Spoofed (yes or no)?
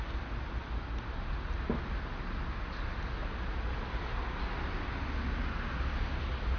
no